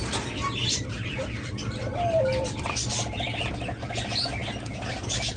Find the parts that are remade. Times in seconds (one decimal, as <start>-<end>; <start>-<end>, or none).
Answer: 0.6-3.5